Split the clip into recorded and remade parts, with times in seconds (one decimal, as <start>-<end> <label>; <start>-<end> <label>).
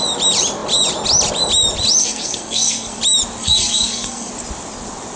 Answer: 0.0-2.0 recorded; 2.0-3.0 remade; 3.0-3.4 recorded; 3.4-4.3 remade; 4.3-5.2 recorded